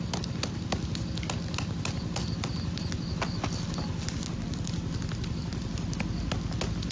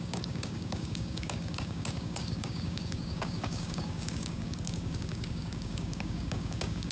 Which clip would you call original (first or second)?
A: first